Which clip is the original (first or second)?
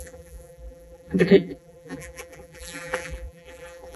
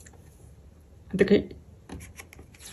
second